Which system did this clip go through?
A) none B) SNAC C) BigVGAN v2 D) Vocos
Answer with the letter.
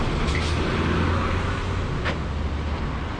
A